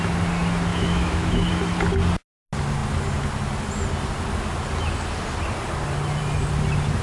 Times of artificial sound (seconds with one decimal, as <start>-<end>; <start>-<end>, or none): 0.7-1.5